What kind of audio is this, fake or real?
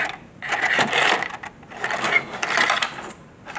real